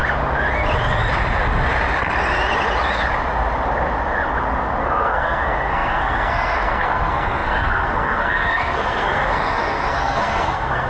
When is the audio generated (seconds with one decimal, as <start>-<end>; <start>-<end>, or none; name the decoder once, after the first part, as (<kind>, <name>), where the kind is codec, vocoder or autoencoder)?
4.8-10.9 (codec, SNAC)